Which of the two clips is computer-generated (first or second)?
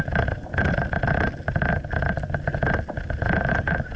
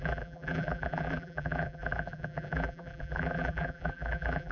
second